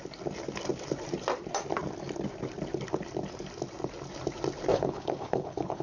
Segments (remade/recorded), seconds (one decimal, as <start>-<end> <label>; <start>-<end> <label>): 0.0-4.7 recorded; 4.7-5.8 remade